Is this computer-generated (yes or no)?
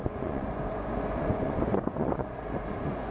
yes